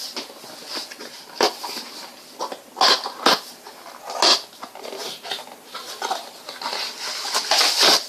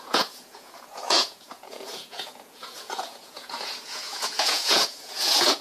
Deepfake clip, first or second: second